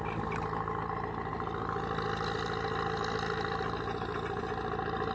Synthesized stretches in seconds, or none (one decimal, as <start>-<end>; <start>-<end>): none